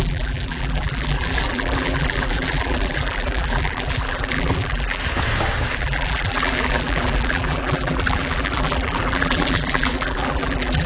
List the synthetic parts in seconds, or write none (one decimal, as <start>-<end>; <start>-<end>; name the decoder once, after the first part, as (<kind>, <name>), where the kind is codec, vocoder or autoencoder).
0.0-5.0 (vocoder, BigVGAN v2); 5.8-10.9

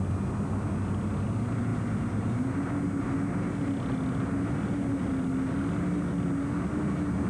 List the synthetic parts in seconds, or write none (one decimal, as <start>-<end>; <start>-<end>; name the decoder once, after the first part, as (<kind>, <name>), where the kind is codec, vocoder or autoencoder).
none